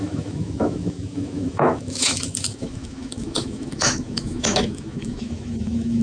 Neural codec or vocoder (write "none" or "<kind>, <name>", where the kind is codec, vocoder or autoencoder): autoencoder, DAC-VAE